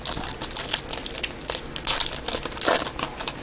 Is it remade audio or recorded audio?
recorded